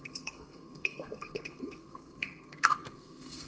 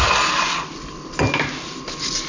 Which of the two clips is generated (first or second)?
first